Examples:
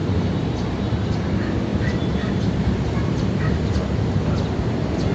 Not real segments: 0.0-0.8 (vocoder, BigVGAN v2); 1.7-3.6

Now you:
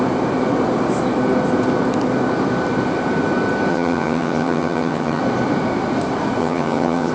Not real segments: 3.7-5.2 (vocoder, HiFi-GAN); 6.4-7.1

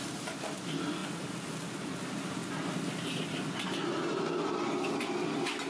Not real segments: 0.0-0.6 (vocoder, BigVGAN v2)

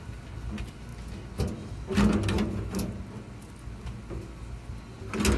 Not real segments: none

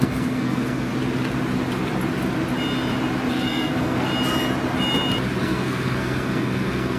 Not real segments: 0.0-0.9 (codec, SNAC); 3.3-4.1; 5.4-7.0